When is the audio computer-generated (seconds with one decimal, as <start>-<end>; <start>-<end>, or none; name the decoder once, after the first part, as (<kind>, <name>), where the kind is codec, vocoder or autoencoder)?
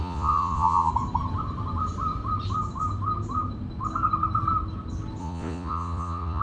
0.0-0.9 (vocoder, Vocos); 5.2-6.4